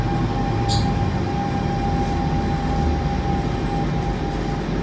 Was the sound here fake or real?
real